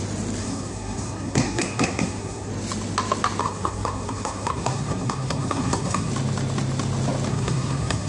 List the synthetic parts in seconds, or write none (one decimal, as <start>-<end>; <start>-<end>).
0.4-2.5; 3.4-6.1; 7.3-8.1